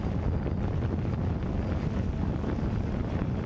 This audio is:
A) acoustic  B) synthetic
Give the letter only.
B